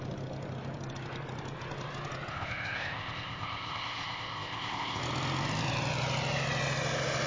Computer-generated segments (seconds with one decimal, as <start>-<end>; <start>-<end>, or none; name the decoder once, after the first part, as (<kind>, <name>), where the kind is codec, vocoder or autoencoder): 2.3-5.0 (codec, ZipCodec)